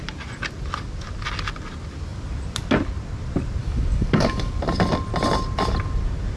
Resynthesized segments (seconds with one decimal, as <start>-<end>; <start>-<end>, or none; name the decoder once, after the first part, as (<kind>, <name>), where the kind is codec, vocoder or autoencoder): 3.6-4.5 (codec, DAC)